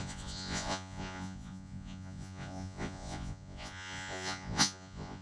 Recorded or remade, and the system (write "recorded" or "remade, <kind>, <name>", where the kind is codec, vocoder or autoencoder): remade, vocoder, Vocos